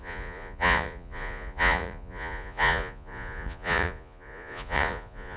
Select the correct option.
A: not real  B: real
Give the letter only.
A